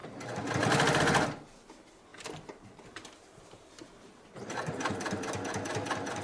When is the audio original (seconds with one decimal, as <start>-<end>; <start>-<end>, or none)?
1.0-2.1; 4.9-6.2